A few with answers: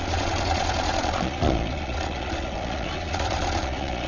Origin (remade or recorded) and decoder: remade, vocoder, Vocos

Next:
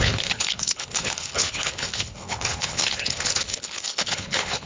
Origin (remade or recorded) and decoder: remade, codec, HILCodec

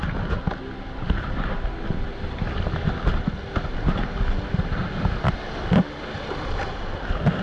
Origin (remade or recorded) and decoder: recorded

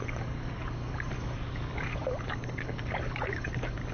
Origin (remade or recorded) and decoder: remade, codec, DAC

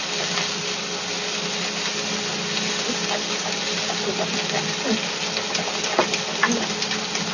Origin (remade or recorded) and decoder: recorded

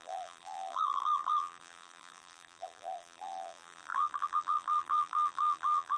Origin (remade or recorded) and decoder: remade, vocoder, BigVGAN v2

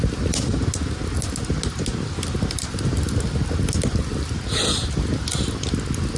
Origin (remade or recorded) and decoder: recorded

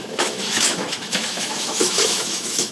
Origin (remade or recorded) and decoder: remade, autoencoder, DAC-VAE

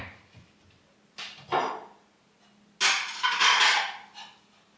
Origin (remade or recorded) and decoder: recorded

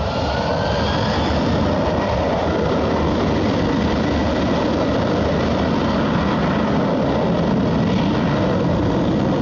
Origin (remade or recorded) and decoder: recorded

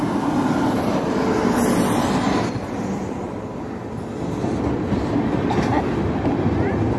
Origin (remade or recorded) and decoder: recorded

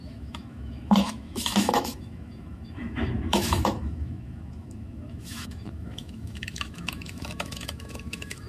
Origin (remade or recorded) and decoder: remade, autoencoder, DAC-VAE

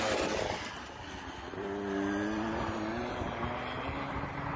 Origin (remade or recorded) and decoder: recorded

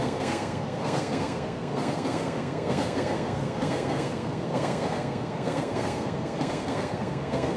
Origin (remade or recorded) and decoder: remade, codec, SNAC